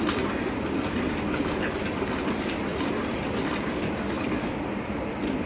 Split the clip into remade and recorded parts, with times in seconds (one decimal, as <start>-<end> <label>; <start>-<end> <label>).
0.0-5.5 recorded